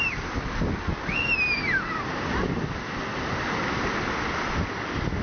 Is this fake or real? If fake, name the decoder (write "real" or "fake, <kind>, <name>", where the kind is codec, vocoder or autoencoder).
real